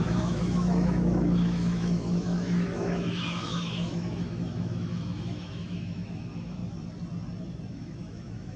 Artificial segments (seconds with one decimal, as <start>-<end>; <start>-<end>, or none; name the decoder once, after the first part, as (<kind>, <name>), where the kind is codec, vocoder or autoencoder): 0.0-6.6 (autoencoder, DAC-VAE); 7.7-8.6